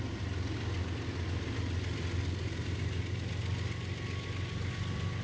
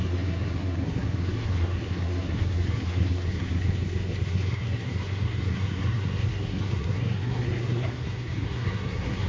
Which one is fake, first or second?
second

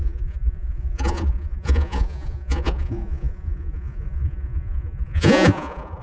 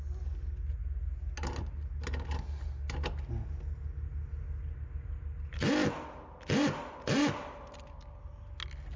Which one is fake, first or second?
first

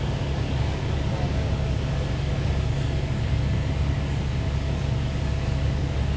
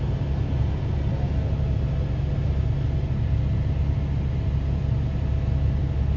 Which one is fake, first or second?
first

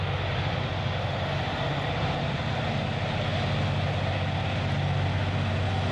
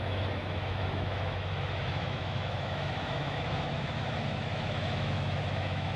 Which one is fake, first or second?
second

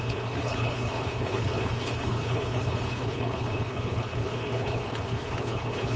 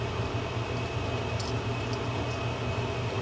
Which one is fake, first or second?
first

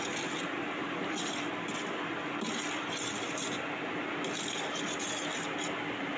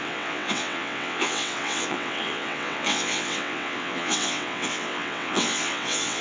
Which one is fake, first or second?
second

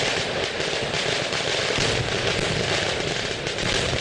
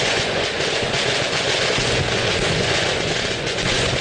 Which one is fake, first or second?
second